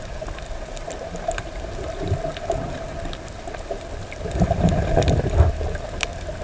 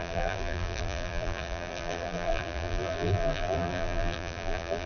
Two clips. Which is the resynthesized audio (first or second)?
second